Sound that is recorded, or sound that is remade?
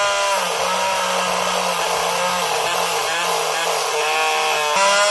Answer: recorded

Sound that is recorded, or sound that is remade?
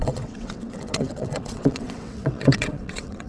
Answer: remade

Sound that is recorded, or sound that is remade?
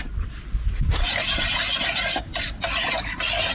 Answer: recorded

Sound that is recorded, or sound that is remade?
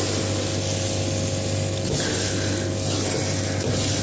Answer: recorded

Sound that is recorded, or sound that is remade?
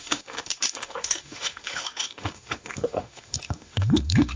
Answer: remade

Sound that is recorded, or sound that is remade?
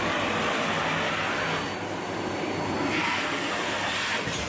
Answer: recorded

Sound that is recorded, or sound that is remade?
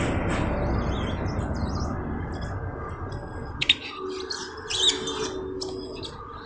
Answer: recorded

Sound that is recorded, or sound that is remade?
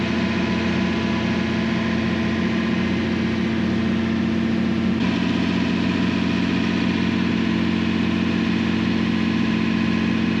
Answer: recorded